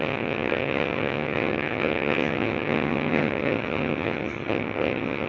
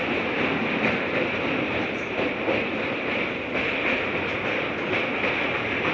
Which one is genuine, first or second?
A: second